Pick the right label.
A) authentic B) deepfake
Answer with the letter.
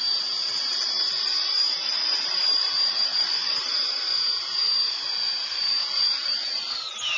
B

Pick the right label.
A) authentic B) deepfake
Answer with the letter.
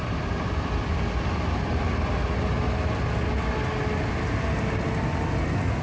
A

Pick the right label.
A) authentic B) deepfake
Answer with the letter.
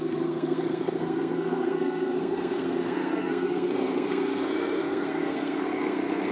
B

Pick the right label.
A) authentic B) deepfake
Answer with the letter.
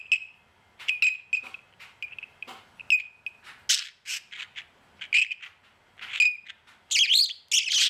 A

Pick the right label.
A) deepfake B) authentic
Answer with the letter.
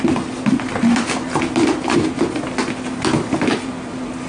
B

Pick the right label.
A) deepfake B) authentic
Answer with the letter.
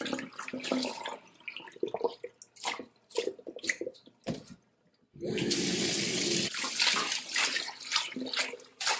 B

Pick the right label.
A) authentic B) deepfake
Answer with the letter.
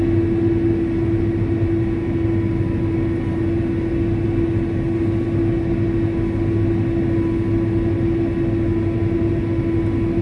A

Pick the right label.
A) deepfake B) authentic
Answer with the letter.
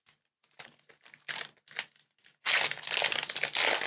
B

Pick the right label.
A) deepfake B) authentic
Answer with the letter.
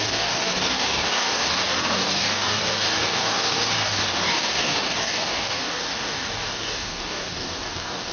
A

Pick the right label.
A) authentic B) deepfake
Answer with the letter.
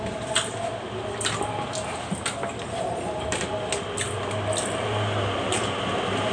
A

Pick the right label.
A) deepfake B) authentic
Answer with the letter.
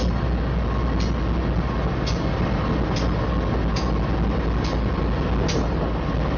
B